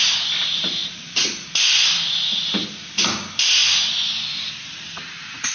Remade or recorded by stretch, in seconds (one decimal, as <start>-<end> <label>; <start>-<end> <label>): 0.0-0.8 recorded; 0.8-1.5 remade; 1.5-5.5 recorded